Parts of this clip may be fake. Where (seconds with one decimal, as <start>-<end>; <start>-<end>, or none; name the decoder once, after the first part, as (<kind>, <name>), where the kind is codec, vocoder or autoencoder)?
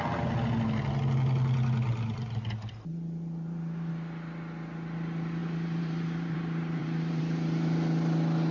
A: 2.9-3.9 (vocoder, BigVGAN v2); 5.4-7.2